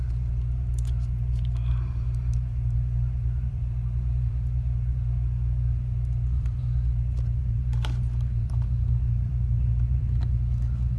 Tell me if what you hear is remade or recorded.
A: remade